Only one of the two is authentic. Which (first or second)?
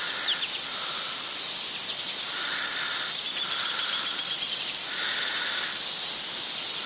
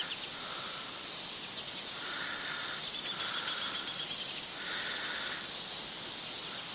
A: second